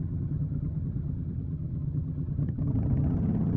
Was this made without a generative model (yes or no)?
no